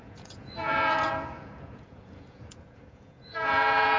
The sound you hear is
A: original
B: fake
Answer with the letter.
B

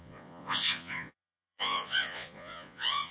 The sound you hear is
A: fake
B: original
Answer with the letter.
A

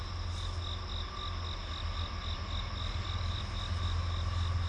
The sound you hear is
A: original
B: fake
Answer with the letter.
A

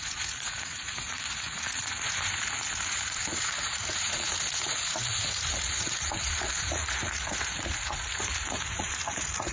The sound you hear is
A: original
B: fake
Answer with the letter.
B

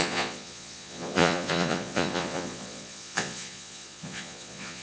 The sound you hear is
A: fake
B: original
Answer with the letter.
A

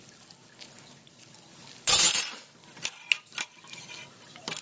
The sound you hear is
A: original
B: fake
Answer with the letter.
A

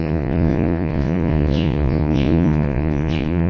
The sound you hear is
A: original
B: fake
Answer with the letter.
B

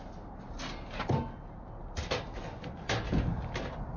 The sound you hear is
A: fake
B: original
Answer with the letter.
B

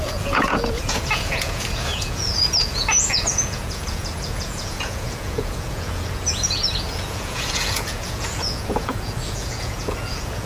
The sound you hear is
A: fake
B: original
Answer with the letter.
A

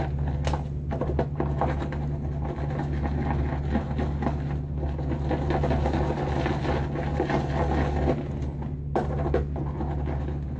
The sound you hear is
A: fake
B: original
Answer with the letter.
B